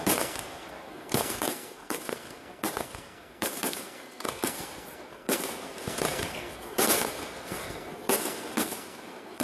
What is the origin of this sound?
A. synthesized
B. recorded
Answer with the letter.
A